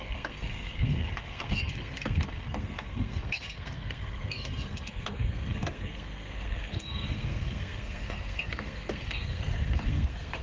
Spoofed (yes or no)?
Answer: yes